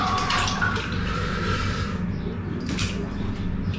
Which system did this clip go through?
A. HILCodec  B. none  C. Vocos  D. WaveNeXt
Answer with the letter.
B